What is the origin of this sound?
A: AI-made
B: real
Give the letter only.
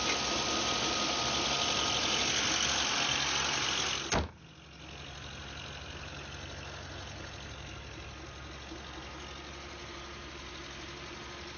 B